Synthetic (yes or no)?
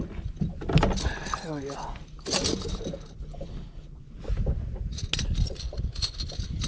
no